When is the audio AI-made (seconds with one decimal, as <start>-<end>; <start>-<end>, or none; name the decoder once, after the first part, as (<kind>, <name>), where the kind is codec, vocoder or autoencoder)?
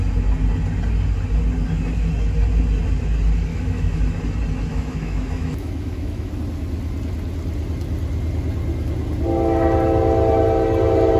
3.5-4.0 (autoencoder, DAC-VAE); 4.7-6.3